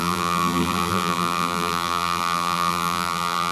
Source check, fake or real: fake